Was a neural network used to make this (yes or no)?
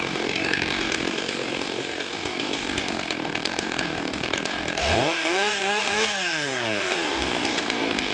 yes